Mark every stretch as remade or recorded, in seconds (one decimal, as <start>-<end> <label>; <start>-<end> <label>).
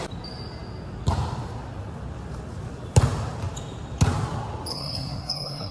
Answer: 0.0-4.7 recorded; 4.7-5.7 remade